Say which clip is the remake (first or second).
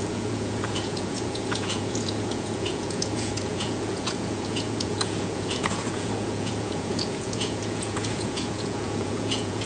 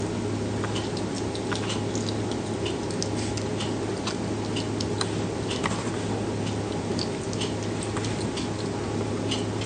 first